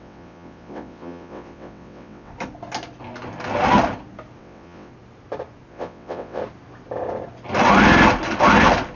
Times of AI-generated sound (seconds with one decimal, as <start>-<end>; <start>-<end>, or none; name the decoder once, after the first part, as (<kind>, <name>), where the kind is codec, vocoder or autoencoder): 0.0-2.3 (vocoder, WaveNeXt); 4.4-4.9; 5.7-6.4